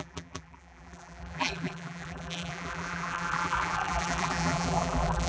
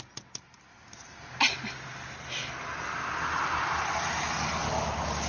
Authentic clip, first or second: second